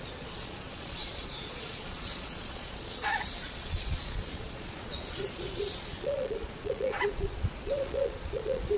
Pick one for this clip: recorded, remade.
remade